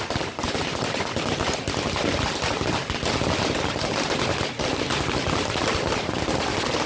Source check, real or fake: real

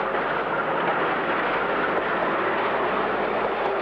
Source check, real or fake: real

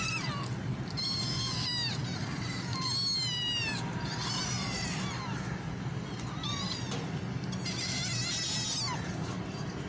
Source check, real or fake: real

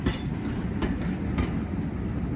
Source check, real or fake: real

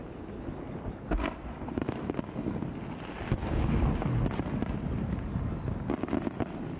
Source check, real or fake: real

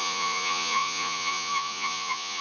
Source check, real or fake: fake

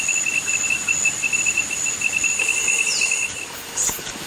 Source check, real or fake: fake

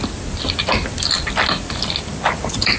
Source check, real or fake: real